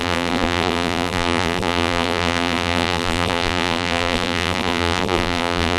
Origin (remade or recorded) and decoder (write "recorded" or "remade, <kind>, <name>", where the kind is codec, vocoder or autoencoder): remade, vocoder, BigVGAN v2